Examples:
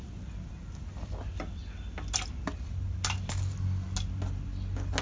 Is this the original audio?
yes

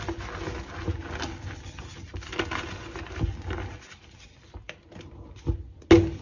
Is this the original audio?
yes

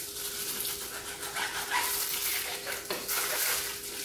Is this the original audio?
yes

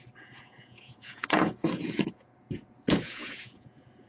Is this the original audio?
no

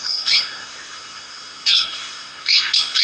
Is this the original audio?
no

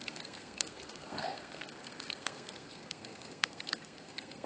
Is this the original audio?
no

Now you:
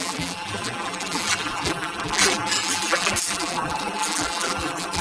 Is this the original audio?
no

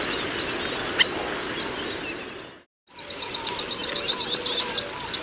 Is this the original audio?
yes